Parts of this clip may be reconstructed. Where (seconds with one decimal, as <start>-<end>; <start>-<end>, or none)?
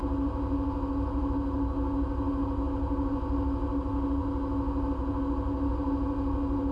none